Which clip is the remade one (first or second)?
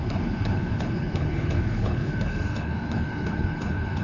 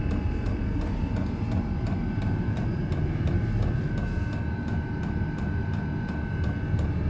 first